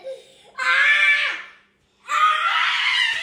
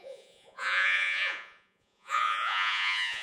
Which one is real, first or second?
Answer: first